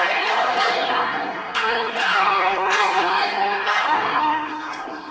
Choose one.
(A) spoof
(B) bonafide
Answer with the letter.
A